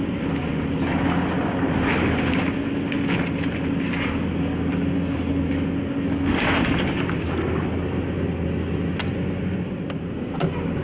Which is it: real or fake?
real